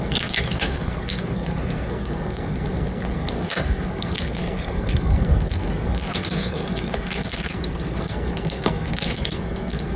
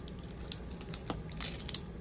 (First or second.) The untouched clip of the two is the second